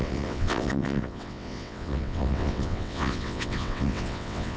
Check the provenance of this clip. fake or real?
fake